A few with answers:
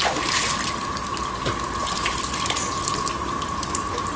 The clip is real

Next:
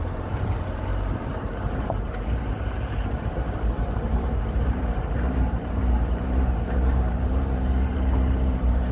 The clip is fake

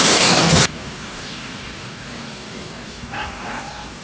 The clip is fake